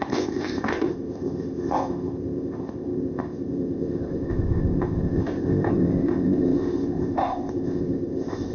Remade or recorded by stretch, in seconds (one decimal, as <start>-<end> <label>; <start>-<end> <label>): 0.0-8.5 remade